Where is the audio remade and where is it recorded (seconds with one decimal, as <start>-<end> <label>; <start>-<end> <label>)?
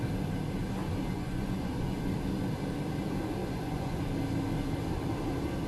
0.0-1.1 recorded; 1.1-2.1 remade; 2.1-3.4 recorded; 3.4-4.0 remade; 4.0-5.7 recorded